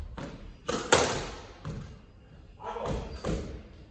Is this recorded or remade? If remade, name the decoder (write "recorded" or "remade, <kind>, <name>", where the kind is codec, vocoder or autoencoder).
recorded